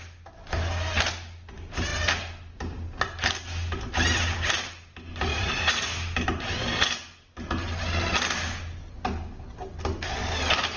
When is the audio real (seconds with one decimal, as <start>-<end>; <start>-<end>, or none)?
0.0-5.3; 5.9-10.8